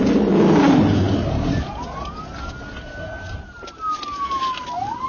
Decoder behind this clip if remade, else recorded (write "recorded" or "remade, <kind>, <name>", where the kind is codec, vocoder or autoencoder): recorded